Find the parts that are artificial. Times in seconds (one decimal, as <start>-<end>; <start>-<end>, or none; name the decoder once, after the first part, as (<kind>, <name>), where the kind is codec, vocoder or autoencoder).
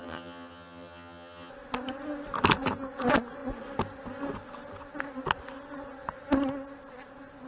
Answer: 0.0-1.5 (vocoder, HiFi-GAN)